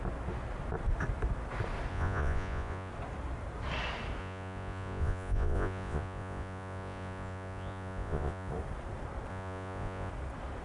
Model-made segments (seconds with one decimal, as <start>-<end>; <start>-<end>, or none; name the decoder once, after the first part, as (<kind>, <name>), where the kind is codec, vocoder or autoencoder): 1.9-2.9 (vocoder, Vocos); 4.2-8.5; 9.3-10.1